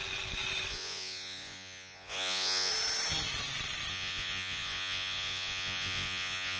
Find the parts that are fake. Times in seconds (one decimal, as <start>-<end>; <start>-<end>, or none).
0.7-2.7; 3.9-6.6